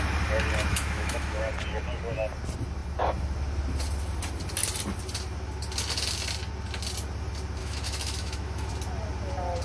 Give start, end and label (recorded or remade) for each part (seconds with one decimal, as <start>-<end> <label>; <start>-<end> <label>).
0.0-0.7 recorded; 0.7-1.5 remade; 1.5-7.6 recorded; 7.6-8.7 remade; 8.7-9.6 recorded